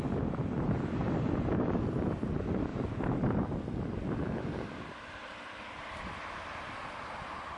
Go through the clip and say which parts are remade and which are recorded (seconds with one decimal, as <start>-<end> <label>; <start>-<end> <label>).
0.0-2.7 remade; 2.7-4.4 recorded; 4.4-7.6 remade